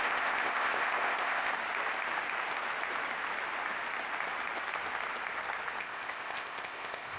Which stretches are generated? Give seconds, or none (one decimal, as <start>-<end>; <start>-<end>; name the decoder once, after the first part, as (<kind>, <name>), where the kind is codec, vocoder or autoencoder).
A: 0.0-1.5 (codec, ZipCodec); 5.8-7.2